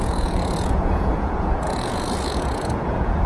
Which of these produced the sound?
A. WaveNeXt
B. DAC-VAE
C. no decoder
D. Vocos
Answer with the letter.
D